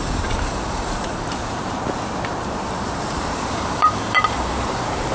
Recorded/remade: remade